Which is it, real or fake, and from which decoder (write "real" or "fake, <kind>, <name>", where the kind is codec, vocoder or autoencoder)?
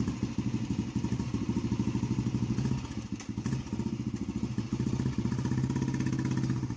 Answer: real